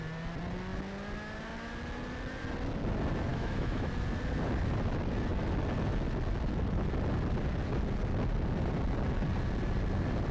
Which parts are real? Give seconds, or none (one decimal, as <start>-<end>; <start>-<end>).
0.0-3.3; 3.9-10.3